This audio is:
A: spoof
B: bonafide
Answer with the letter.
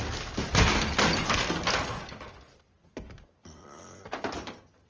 B